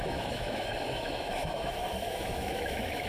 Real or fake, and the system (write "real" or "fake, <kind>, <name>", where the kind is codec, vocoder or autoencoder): fake, autoencoder, DAC-VAE